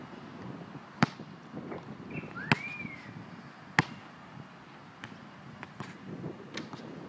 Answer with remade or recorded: recorded